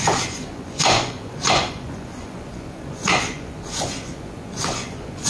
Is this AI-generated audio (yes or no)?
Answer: yes